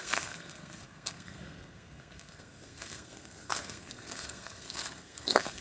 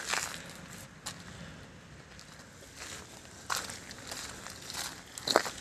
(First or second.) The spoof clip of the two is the first